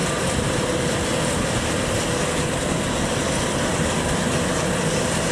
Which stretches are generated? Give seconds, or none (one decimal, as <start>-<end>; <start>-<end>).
0.0-0.7